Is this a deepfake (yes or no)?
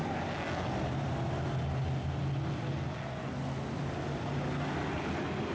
no